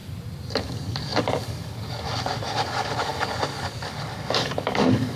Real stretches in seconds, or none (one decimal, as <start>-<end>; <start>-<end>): 0.0-0.6